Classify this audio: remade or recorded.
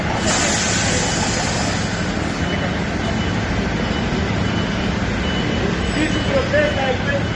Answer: recorded